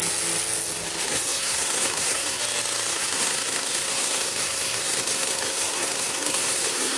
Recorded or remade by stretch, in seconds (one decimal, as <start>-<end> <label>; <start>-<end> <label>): 0.0-1.0 recorded; 1.0-2.4 remade; 2.4-2.9 recorded; 2.9-7.0 remade